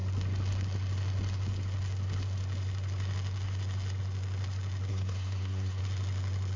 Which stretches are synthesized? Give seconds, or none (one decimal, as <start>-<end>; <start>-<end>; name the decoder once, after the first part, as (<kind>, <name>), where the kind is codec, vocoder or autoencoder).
4.9-5.8 (codec, SNAC)